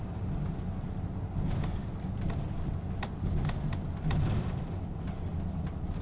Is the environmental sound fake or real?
real